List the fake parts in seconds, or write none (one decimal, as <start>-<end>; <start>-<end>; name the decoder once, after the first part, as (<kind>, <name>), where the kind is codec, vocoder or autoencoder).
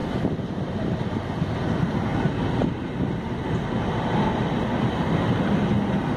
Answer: none